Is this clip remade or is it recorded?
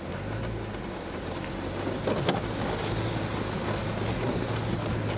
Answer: recorded